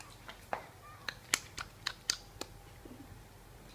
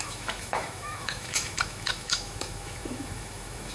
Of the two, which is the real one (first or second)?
first